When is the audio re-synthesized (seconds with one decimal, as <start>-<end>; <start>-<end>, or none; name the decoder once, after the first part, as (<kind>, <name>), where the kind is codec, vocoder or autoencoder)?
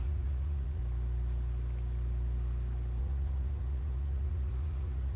0.0-0.8 (vocoder, Vocos); 3.0-5.2